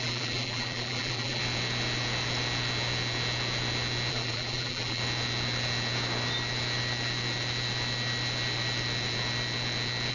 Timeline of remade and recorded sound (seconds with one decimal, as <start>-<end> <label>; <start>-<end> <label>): 0.0-1.4 remade; 1.4-4.1 recorded; 4.1-5.0 remade; 5.0-10.1 recorded